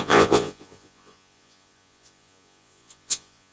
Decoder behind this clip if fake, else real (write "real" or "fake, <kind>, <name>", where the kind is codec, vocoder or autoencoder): fake, vocoder, Vocos